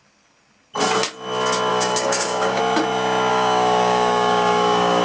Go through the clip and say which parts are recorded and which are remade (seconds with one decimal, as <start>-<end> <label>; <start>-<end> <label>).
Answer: 0.0-1.7 recorded; 1.7-2.6 remade; 2.6-3.3 recorded; 3.3-5.0 remade